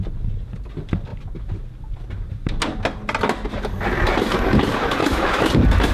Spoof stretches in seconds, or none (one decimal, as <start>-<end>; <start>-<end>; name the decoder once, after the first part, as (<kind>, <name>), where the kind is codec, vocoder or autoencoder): 5.0-5.5 (autoencoder, DAC-VAE)